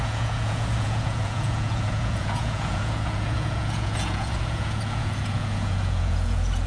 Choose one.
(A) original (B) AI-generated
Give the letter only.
B